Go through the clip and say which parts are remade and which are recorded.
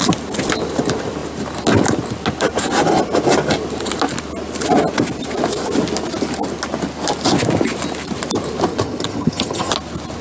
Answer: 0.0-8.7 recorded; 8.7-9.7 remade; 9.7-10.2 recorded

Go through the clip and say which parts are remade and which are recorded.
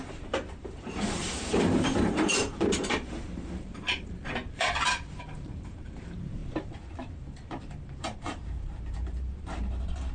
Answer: 0.0-10.1 remade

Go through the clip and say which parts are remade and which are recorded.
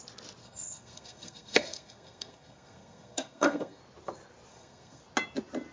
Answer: 0.0-0.4 recorded; 0.4-3.8 remade; 3.8-4.5 recorded; 4.5-5.0 remade; 5.0-5.7 recorded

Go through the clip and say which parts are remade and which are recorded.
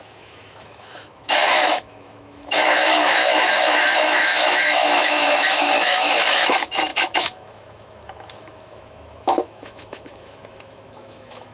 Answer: 0.0-11.5 remade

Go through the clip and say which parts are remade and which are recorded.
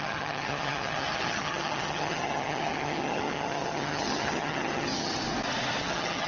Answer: 0.0-5.1 remade; 5.1-5.8 recorded; 5.8-6.3 remade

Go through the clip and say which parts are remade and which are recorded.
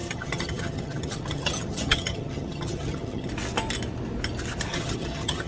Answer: 0.0-3.3 remade; 3.3-4.7 recorded; 4.7-5.5 remade